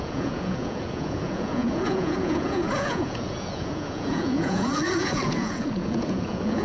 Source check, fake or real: fake